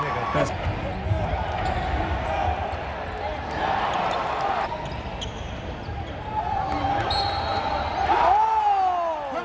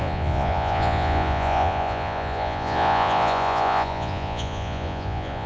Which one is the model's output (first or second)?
second